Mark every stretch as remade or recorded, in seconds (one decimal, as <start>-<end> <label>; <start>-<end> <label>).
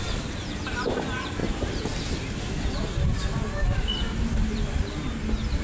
0.0-5.6 recorded